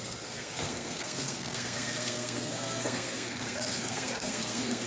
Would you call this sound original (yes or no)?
no